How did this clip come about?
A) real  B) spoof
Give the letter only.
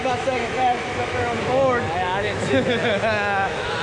B